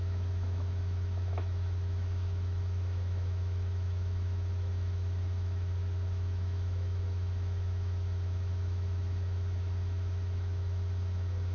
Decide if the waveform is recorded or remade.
remade